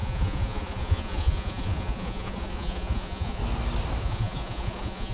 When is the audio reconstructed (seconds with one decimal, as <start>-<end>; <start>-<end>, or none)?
0.0-3.4; 4.0-5.1